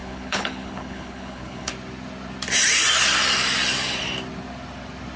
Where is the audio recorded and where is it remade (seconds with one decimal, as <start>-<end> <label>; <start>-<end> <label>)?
0.0-1.7 remade; 1.7-5.2 recorded